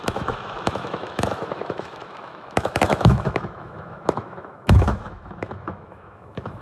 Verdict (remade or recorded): remade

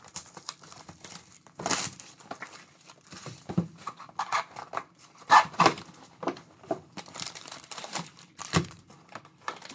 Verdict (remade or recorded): remade